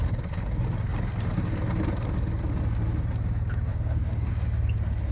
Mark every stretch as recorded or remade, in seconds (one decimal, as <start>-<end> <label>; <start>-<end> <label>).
0.0-3.7 recorded; 3.7-4.3 remade; 4.3-5.1 recorded